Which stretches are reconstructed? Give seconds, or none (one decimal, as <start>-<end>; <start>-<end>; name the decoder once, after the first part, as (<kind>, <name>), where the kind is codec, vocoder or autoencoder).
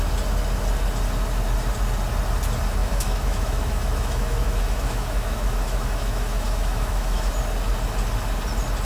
2.8-7.3 (autoencoder, DAC-VAE)